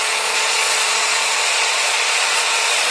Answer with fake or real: fake